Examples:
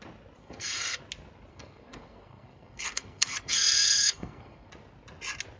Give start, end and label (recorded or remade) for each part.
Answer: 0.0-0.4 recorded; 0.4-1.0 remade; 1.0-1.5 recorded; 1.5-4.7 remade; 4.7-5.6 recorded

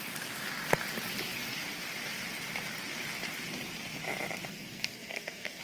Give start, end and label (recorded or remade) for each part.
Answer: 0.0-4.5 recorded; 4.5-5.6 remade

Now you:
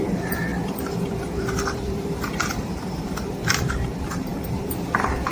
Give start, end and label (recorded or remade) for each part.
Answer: 0.0-5.3 remade